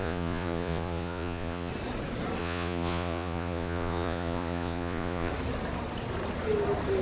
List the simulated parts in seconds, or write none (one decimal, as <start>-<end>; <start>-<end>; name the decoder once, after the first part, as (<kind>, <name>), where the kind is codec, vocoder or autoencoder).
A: 0.0-1.7 (vocoder, Vocos); 2.4-5.3